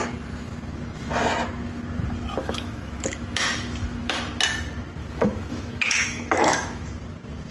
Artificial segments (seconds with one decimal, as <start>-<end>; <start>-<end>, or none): 2.4-4.2; 5.0-6.9